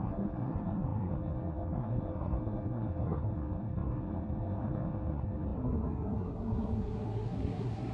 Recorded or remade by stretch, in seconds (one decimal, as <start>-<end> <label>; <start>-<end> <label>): 0.0-7.9 remade